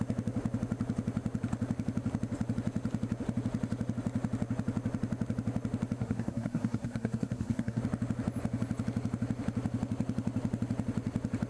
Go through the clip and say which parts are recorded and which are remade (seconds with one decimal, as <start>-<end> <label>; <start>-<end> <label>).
0.0-6.0 recorded; 6.0-7.8 remade; 7.8-11.5 recorded